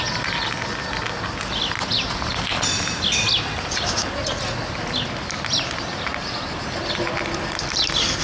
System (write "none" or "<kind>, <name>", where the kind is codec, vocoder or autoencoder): none